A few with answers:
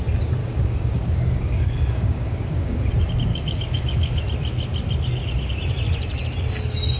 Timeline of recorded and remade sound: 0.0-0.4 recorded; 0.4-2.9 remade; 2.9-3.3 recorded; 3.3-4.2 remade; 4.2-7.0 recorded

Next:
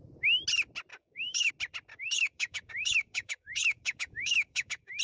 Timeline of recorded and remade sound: 0.0-0.9 recorded; 0.9-1.5 remade; 1.5-1.9 recorded; 1.9-5.0 remade

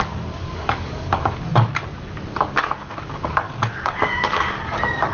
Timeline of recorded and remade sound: 0.0-5.1 remade

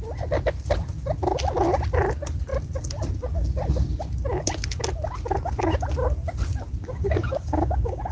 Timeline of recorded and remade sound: 0.0-6.8 recorded; 6.8-8.1 remade

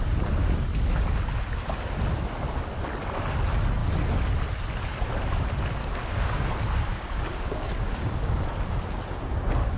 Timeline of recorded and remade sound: 0.0-5.8 recorded; 5.8-6.5 remade; 6.5-6.9 recorded; 6.9-8.5 remade; 8.5-9.8 recorded

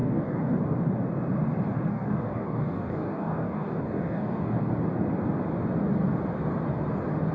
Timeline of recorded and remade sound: 0.0-0.6 remade; 0.6-1.9 recorded; 1.9-4.7 remade; 4.7-7.3 recorded

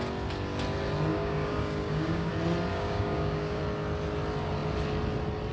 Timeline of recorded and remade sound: 0.0-1.1 recorded; 1.1-2.3 remade; 2.3-2.7 recorded; 2.7-3.6 remade; 3.6-5.5 recorded